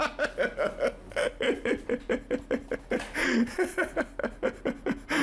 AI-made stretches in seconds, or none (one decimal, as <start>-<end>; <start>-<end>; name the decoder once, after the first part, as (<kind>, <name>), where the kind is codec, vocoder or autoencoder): 3.2-3.9 (vocoder, Vocos)